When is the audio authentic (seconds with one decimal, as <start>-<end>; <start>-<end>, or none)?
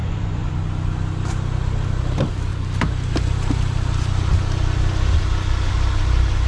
0.5-6.5